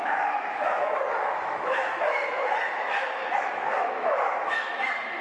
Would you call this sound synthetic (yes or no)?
yes